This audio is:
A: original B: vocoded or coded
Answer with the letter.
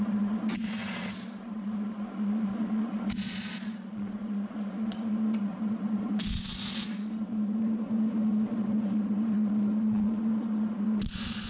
B